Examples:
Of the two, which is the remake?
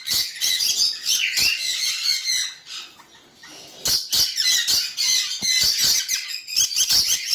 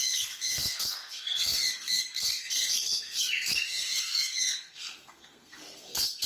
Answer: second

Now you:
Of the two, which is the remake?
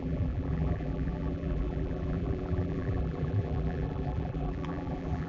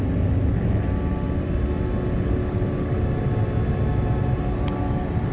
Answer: first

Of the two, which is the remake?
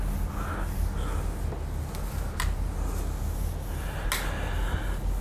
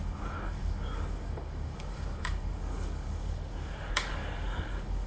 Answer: second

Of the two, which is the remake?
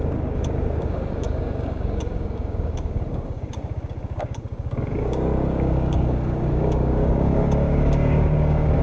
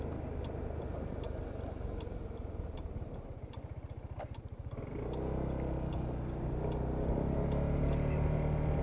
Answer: first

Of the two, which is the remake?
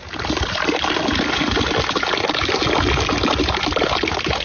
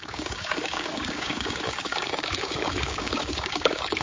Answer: second